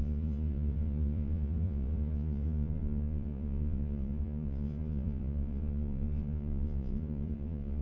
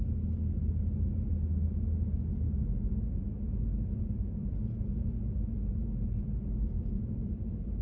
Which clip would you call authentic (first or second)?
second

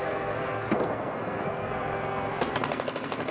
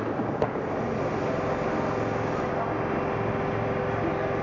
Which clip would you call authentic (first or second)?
second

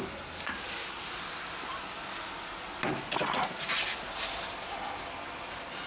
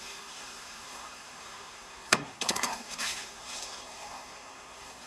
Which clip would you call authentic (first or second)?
first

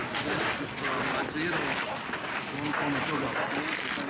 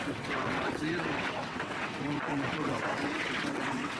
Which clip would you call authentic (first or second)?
first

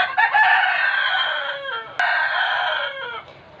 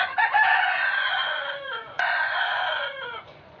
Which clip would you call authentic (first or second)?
first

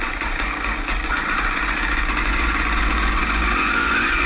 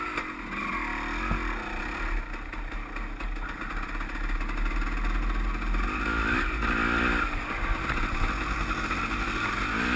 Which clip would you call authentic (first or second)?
second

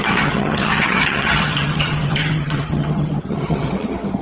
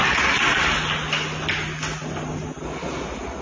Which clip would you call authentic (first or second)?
second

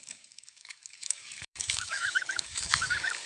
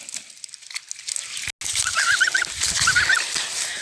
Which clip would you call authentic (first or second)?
second